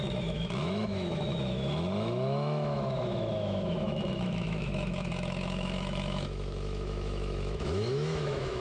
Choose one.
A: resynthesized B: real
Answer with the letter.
A